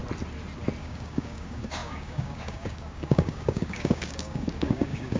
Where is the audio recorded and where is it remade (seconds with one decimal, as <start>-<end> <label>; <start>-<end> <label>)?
0.0-0.8 recorded; 0.8-5.2 remade